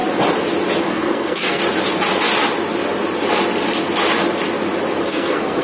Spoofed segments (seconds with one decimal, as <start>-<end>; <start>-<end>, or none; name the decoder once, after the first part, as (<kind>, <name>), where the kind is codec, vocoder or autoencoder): 0.8-1.6 (codec, SNAC); 5.0-5.6